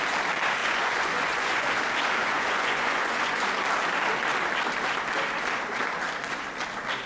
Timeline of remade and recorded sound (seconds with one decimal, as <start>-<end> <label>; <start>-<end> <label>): 0.0-0.6 recorded; 0.6-1.7 remade; 1.7-2.2 recorded; 2.2-3.4 remade; 3.4-7.1 recorded